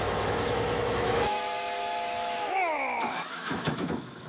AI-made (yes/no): yes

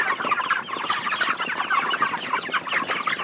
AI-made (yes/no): no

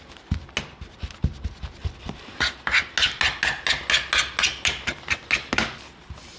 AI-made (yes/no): no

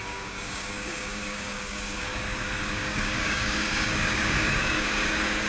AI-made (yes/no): yes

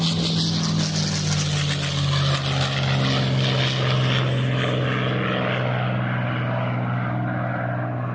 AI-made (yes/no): no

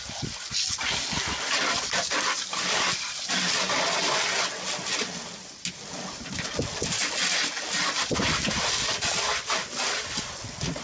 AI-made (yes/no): no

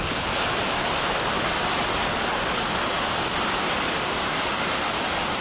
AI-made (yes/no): no